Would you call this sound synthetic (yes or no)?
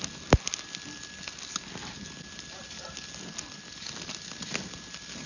no